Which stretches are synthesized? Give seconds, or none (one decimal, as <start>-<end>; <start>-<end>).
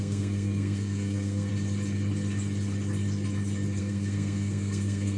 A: 0.0-1.5; 3.8-5.2